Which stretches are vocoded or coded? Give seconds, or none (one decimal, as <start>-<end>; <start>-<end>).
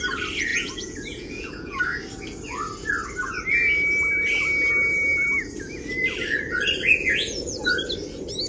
0.5-1.8; 7.0-7.8